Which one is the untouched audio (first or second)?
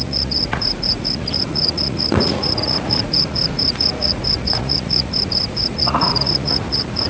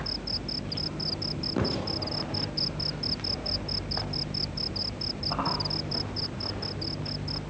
second